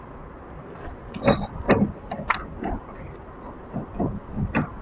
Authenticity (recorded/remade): recorded